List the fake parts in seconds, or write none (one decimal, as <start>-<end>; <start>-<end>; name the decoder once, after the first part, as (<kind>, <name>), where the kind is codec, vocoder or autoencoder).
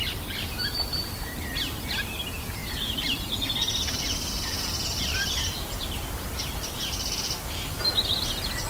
2.6-7.8 (vocoder, BigVGAN v2)